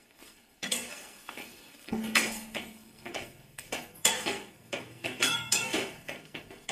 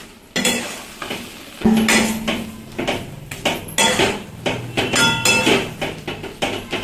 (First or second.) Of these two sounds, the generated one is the first